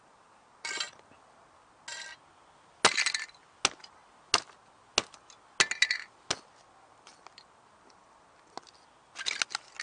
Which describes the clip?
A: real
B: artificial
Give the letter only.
A